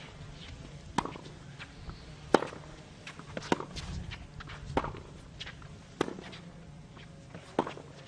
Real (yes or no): yes